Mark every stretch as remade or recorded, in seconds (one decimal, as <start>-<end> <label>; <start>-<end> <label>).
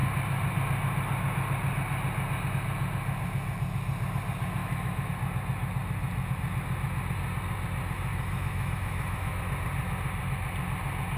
0.0-4.6 recorded; 4.6-5.1 remade; 5.1-8.1 recorded; 8.1-9.4 remade; 9.4-11.2 recorded